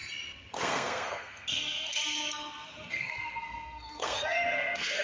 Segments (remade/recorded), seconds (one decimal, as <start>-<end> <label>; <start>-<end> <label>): 0.0-0.5 recorded; 0.5-2.0 remade; 2.0-2.7 recorded; 2.7-5.0 remade